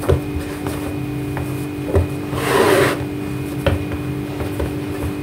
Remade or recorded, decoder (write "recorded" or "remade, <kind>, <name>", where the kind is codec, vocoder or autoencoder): recorded